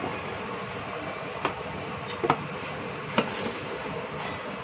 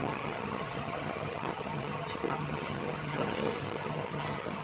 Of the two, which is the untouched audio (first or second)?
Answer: first